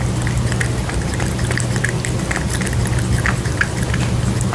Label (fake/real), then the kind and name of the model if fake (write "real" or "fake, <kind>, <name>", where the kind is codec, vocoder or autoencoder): real